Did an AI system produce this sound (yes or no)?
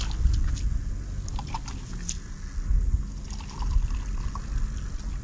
no